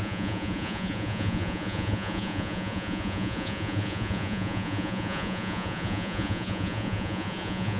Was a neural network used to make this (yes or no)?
yes